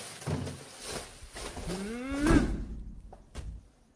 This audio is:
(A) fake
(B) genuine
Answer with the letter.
B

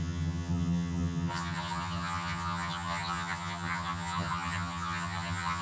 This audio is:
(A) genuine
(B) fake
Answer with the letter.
B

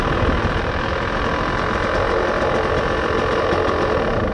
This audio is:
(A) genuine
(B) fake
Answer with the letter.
A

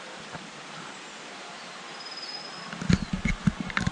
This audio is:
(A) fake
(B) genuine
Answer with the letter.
B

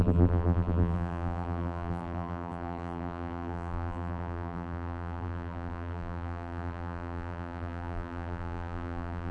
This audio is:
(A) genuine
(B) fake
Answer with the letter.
B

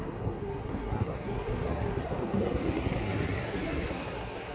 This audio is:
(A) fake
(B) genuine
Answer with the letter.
A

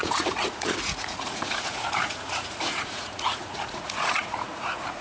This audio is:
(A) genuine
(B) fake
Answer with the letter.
B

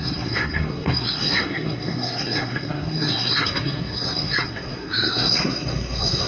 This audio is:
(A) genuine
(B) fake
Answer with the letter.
B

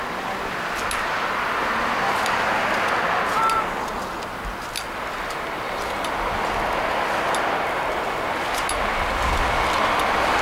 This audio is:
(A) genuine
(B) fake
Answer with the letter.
A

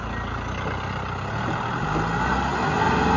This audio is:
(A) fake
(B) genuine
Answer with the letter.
B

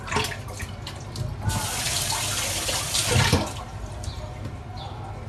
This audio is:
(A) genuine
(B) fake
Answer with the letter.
A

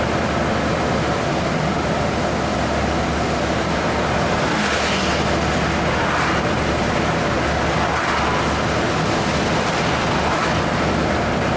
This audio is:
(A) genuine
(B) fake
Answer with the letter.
A